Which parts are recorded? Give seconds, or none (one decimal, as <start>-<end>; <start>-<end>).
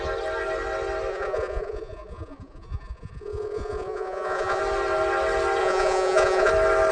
0.0-1.1; 4.6-5.6; 6.5-6.9